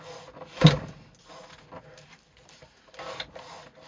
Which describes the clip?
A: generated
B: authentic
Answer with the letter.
B